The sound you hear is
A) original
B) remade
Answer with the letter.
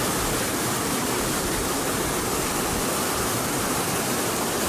A